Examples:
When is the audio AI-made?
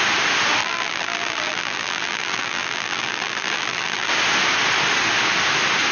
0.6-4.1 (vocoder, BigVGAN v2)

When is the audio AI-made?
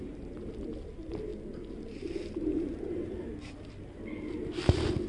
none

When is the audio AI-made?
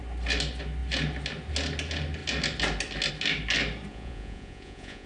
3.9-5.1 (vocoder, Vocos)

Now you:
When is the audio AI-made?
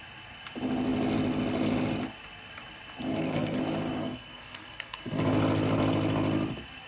3.1-3.6 (codec, SNAC); 4.0-5.2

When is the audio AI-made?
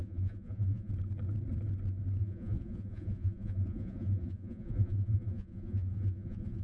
0.0-0.9 (vocoder, Vocos); 2.2-6.6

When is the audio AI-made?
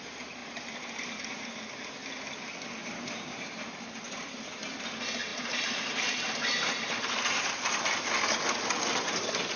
0.4-1.6 (vocoder, BigVGAN v2); 2.8-4.6; 5.3-8.1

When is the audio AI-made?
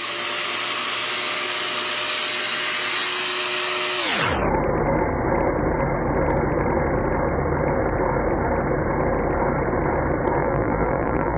10.4-11.4 (vocoder, BigVGAN v2)